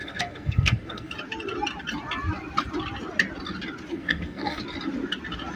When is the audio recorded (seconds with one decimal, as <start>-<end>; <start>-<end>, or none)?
1.1-3.9; 4.6-5.6

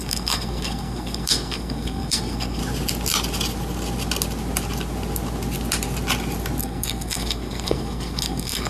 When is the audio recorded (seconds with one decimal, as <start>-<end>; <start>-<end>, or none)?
2.6-6.6

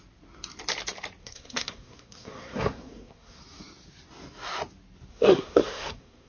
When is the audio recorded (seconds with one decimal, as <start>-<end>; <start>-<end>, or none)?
0.0-1.2; 3.4-5.1

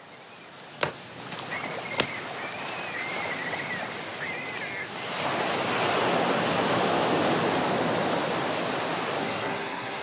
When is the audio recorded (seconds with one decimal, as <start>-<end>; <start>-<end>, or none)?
0.0-9.2

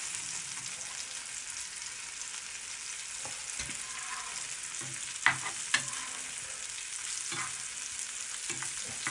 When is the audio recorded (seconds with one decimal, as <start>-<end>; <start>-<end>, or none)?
0.0-9.1

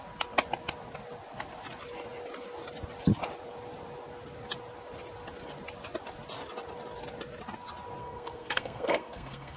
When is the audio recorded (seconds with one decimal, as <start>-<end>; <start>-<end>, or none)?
0.0-8.0

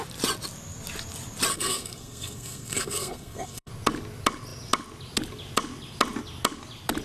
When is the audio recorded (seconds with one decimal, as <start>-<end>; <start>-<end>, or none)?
0.0-1.5; 3.7-7.0

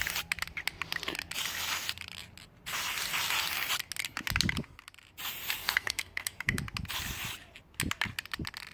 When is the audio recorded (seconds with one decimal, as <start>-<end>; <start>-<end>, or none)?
0.0-5.6; 6.6-8.7